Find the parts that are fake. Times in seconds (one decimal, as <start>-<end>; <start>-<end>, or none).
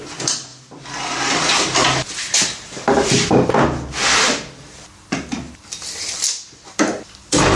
none